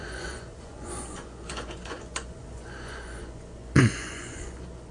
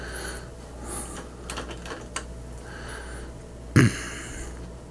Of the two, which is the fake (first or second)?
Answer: first